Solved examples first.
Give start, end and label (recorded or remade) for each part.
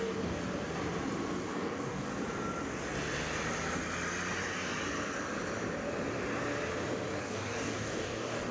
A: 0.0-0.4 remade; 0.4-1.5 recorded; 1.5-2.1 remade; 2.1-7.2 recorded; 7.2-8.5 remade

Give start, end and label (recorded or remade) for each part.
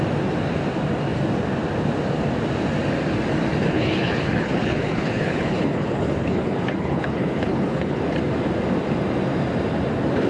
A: 0.0-3.6 recorded; 3.6-8.0 remade; 8.0-10.3 recorded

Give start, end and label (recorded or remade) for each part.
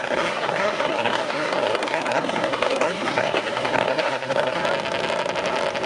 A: 0.0-4.6 remade; 4.6-5.9 recorded